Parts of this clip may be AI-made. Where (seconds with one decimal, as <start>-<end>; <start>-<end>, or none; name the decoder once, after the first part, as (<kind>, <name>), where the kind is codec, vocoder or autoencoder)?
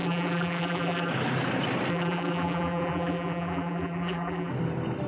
0.0-1.1 (vocoder, BigVGAN v2); 1.9-4.5